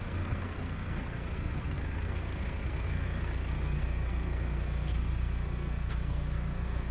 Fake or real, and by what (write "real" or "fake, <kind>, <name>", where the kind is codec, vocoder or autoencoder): fake, codec, SNAC